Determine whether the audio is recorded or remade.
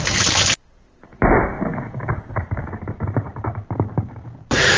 remade